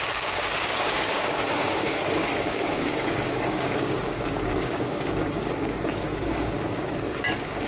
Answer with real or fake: fake